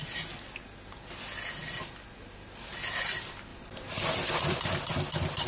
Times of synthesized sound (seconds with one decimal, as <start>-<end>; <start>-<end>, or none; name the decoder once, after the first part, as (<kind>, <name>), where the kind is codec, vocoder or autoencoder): 3.5-4.4 (vocoder, BigVGAN v2)